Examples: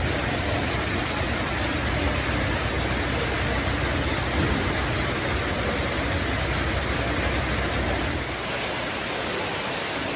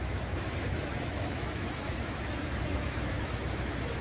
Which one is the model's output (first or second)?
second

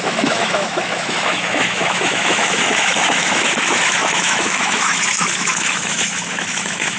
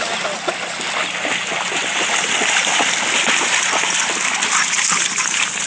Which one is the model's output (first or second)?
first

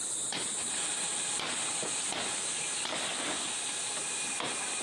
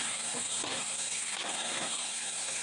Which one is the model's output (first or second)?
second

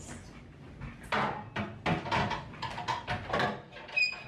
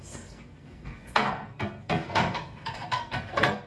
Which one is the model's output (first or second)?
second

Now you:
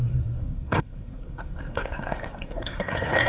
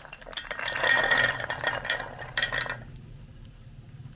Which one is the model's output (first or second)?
first